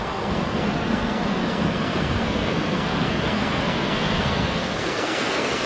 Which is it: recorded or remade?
remade